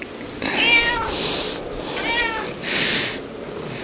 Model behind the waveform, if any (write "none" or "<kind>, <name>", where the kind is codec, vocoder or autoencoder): none